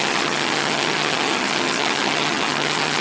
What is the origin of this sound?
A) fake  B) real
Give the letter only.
A